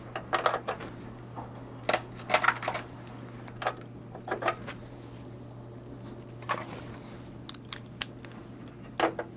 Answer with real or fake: real